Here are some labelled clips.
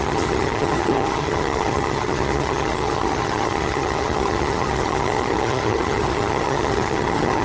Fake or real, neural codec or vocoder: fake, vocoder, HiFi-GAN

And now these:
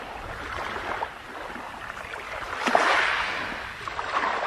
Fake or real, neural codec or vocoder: real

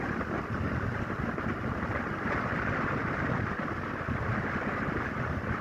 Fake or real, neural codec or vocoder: real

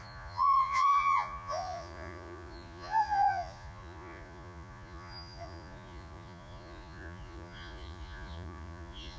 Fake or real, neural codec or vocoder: fake, vocoder, Vocos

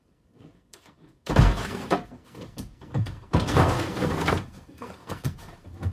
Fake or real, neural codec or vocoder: fake, codec, SNAC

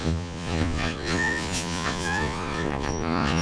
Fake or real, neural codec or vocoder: fake, vocoder, Vocos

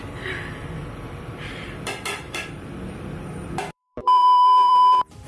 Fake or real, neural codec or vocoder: fake, vocoder, BigVGAN v2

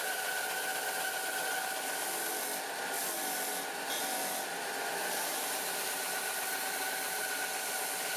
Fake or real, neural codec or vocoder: real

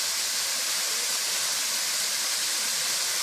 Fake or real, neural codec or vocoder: real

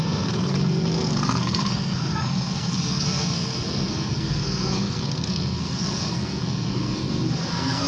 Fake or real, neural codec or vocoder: fake, codec, SNAC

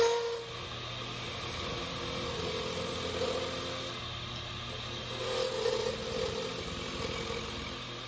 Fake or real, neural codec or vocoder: real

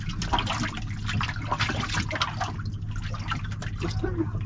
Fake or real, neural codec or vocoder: real